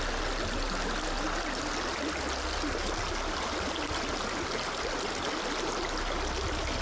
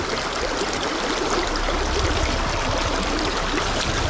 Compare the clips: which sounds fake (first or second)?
second